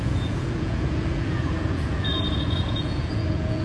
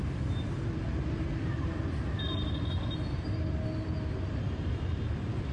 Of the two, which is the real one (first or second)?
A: second